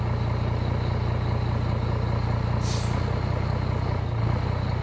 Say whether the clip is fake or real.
real